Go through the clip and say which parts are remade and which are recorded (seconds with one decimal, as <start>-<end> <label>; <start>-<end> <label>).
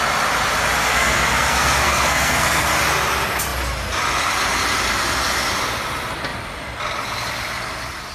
0.0-0.9 recorded; 0.9-2.7 remade; 2.7-8.1 recorded